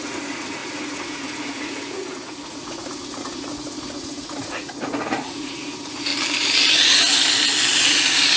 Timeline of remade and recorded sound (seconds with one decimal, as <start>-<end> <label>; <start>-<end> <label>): 0.0-6.1 remade; 6.1-8.4 recorded